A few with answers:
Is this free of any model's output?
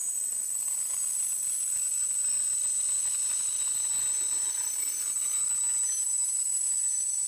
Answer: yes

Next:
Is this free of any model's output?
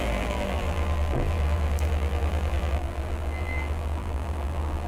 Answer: no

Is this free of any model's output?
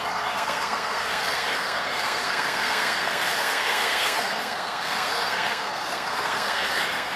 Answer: no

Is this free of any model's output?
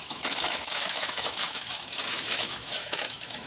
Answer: no